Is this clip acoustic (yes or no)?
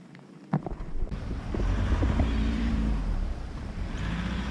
no